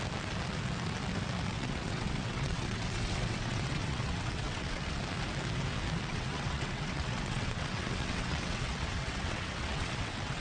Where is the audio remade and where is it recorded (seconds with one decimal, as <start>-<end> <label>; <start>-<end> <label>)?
0.0-1.5 recorded; 1.5-5.0 remade; 5.0-6.1 recorded; 6.1-10.4 remade